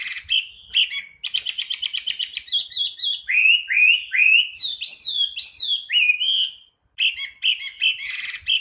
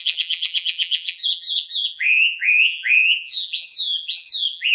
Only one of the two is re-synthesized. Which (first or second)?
second